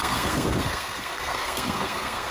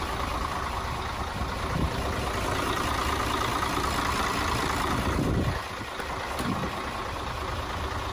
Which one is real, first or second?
second